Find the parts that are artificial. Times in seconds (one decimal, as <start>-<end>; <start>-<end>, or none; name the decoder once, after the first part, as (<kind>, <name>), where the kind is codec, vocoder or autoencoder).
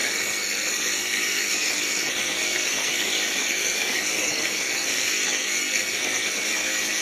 0.0-7.0 (codec, SNAC)